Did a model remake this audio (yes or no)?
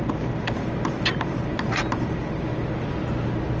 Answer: no